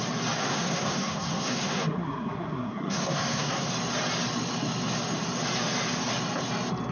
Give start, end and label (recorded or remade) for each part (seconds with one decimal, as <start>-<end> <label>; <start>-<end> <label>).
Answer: 0.0-0.4 recorded; 0.4-3.7 remade; 3.7-6.9 recorded